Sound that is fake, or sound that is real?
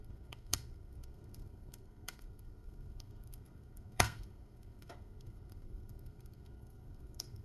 fake